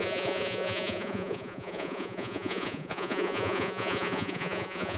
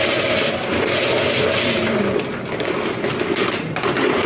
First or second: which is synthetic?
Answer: first